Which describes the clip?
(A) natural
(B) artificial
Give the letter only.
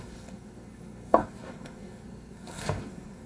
B